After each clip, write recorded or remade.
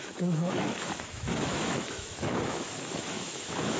remade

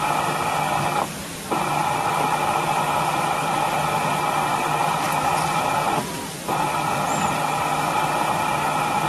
recorded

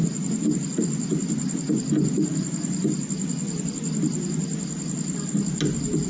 recorded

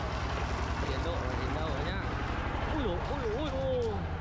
recorded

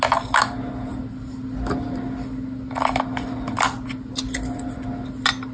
recorded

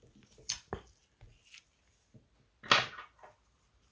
recorded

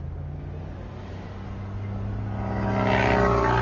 recorded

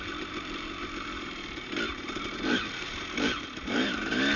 remade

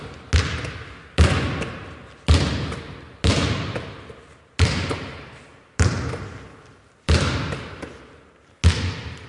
recorded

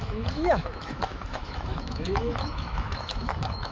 remade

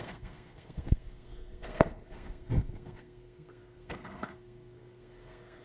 remade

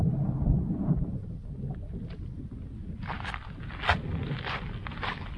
recorded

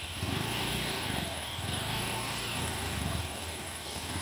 remade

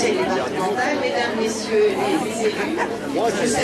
recorded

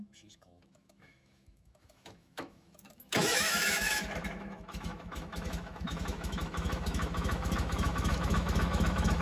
remade